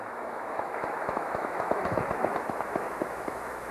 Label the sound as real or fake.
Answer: fake